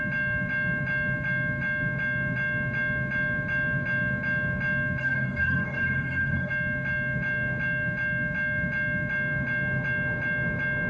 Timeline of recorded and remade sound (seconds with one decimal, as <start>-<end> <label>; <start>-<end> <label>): 0.0-5.0 recorded; 5.0-6.5 remade; 6.5-10.9 recorded